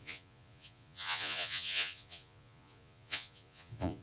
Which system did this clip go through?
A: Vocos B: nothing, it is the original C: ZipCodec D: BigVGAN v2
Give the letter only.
A